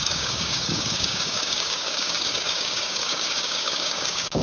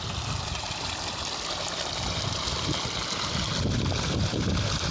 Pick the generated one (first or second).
first